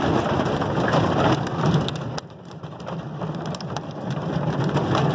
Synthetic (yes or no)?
no